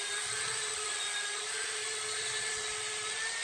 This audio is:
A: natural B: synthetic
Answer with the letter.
A